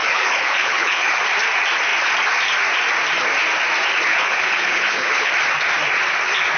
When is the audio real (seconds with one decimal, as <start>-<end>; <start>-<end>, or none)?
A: 1.2-4.1; 5.3-6.6